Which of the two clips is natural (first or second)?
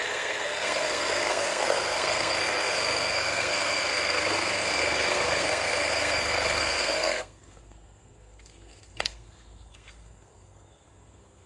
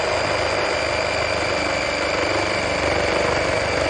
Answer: second